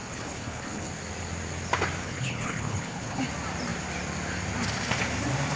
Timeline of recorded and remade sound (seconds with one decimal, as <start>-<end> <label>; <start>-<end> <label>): 0.0-0.9 remade; 0.9-2.0 recorded; 2.0-3.2 remade; 3.2-5.6 recorded